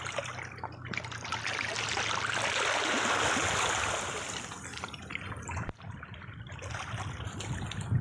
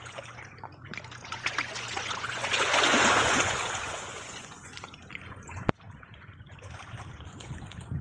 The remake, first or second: second